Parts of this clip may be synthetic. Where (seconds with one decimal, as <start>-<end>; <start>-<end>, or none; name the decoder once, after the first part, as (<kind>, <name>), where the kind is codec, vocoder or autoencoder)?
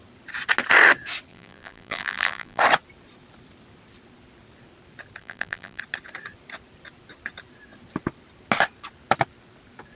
1.3-2.6 (vocoder, BigVGAN v2); 5.2-5.8